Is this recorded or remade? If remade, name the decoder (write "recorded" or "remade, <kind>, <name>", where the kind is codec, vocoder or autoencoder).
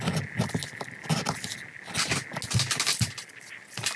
recorded